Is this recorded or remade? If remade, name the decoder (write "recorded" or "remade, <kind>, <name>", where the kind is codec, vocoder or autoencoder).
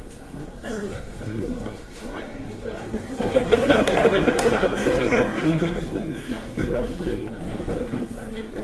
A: remade, codec, SNAC